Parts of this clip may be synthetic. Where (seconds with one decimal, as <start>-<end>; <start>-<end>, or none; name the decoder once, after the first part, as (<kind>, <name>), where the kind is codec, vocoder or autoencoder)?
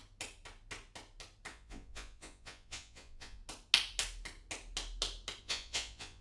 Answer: 1.5-3.4 (vocoder, Vocos); 5.4-6.2